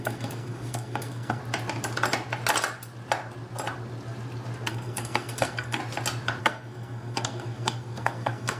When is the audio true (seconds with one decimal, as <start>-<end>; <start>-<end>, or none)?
1.4-4.7; 5.8-6.4